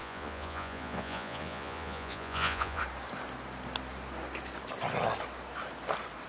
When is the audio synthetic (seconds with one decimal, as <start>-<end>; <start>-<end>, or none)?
0.0-2.8